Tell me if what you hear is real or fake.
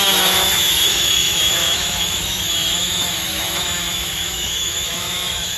fake